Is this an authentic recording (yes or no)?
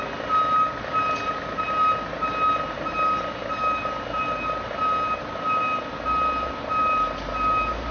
yes